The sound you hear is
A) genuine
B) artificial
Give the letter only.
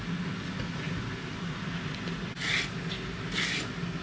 A